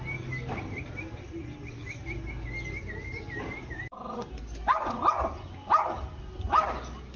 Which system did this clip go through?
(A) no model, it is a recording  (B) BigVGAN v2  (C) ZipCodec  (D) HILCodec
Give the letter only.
A